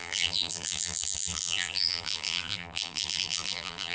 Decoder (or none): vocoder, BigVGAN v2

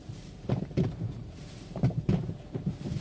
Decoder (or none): vocoder, BigVGAN v2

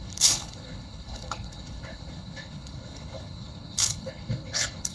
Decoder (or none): codec, HILCodec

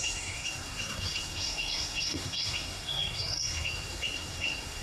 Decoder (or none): codec, SNAC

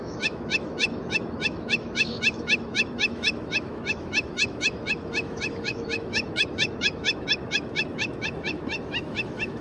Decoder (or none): autoencoder, DAC-VAE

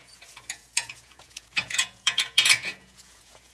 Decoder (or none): vocoder, Vocos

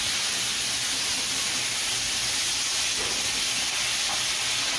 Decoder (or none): none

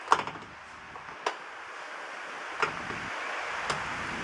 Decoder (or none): none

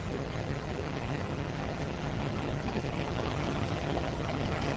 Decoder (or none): vocoder, HiFi-GAN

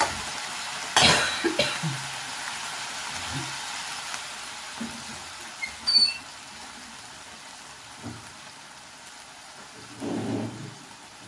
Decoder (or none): none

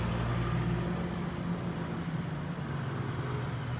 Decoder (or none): none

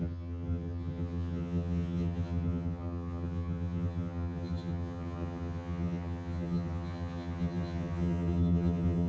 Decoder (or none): vocoder, HiFi-GAN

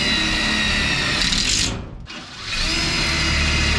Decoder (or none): none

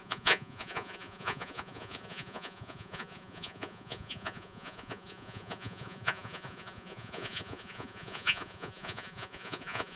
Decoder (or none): vocoder, Vocos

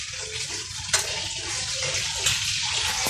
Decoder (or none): none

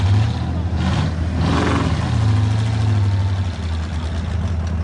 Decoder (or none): none